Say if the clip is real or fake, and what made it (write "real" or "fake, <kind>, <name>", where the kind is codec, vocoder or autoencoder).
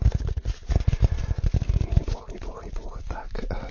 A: real